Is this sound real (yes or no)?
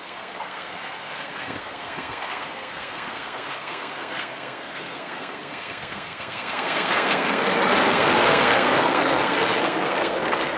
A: no